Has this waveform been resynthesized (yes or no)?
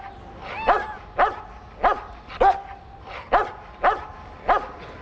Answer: no